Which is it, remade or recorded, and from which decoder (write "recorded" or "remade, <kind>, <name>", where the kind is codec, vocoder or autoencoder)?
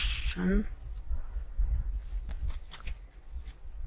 recorded